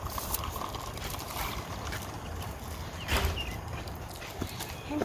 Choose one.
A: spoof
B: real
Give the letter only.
B